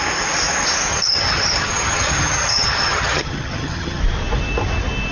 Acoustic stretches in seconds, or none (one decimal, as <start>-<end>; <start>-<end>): 0.0-0.9; 4.0-5.1